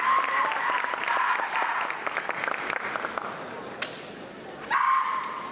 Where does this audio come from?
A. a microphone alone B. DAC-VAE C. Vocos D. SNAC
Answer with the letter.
A